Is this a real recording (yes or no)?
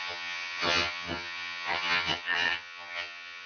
no